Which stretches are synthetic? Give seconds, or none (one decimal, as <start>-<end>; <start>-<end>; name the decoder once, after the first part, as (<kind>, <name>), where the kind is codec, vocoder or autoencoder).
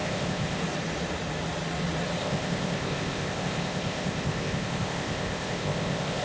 0.0-0.6 (codec, ZipCodec); 2.2-6.2